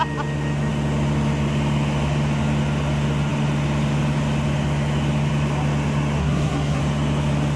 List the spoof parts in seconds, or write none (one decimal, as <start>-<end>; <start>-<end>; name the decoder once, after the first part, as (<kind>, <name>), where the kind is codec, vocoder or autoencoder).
6.2-6.8 (codec, SNAC)

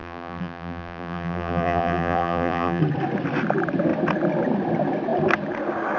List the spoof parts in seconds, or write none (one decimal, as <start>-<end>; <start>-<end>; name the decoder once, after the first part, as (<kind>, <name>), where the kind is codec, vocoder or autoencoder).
0.0-2.8 (vocoder, BigVGAN v2)

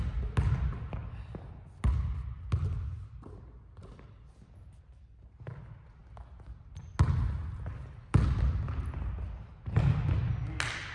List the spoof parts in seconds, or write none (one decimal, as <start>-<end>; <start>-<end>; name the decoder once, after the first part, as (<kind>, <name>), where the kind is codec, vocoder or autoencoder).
none

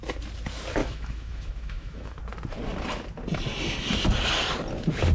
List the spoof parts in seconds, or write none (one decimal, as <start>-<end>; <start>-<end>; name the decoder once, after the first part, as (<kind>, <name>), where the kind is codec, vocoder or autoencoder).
0.8-2.2 (autoencoder, DAC-VAE)